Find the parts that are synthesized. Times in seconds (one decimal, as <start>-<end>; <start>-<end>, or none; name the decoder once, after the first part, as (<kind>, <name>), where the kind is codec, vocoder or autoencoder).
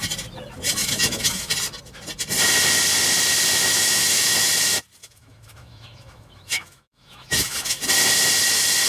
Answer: 0.8-1.5 (autoencoder, DAC-VAE); 3.7-4.5; 5.0-7.8